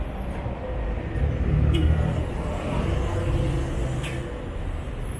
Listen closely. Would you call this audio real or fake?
real